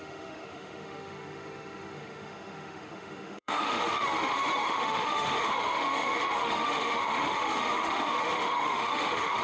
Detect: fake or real fake